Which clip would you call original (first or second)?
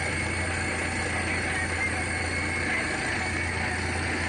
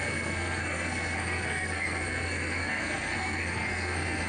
first